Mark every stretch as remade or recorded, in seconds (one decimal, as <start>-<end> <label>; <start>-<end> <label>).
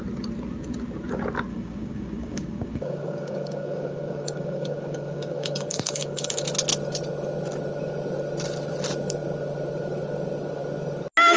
0.0-1.5 recorded; 1.5-6.4 remade; 6.4-11.4 recorded